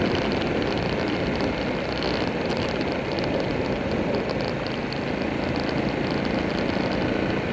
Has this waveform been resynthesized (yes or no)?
no